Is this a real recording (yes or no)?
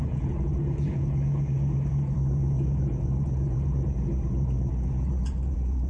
no